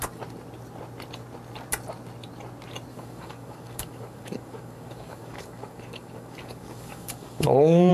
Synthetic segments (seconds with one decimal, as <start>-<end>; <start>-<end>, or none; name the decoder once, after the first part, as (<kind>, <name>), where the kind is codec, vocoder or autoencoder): 2.9-7.9 (codec, DAC)